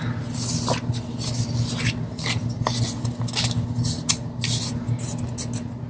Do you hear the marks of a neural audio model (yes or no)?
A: no